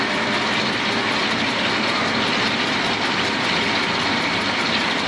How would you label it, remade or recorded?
recorded